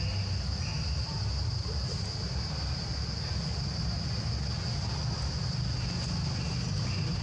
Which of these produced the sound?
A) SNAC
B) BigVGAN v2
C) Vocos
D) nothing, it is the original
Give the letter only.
D